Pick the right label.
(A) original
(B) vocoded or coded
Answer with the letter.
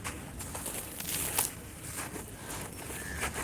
A